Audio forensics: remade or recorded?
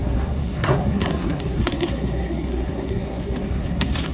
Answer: remade